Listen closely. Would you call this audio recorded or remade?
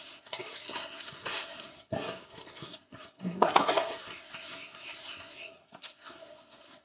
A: remade